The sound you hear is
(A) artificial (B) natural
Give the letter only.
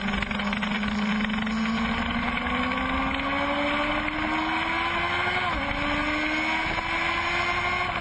B